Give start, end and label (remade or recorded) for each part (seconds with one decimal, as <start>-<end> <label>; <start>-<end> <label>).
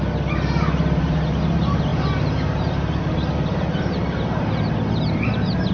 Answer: 0.0-5.7 recorded